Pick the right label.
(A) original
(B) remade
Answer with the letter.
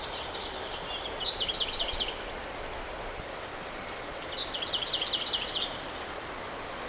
B